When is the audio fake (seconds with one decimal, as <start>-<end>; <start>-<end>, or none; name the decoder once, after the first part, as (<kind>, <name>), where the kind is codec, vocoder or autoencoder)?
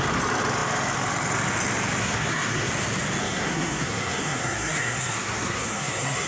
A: 2.0-2.7 (codec, SNAC); 3.2-6.3